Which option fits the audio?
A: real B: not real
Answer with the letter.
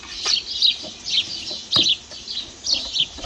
A